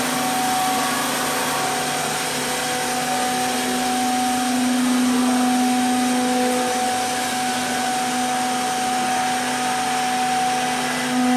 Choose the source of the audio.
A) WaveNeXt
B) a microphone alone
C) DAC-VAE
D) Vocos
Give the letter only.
B